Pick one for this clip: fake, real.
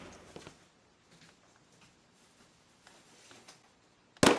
real